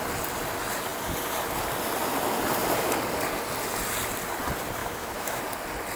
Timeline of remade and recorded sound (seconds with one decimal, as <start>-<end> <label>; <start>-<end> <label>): 0.0-4.8 recorded; 4.8-5.4 remade; 5.4-6.0 recorded